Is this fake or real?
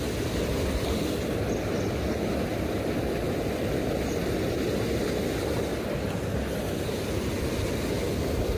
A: real